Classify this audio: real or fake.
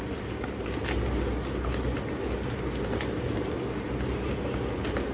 real